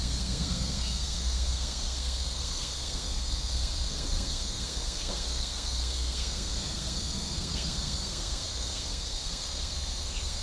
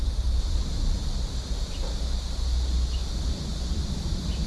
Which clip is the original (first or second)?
second